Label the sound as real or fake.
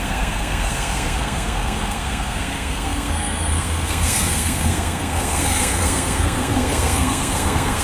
fake